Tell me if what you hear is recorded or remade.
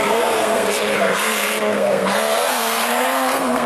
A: remade